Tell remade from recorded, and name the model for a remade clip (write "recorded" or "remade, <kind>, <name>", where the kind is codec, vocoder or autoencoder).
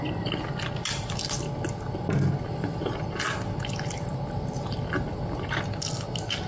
recorded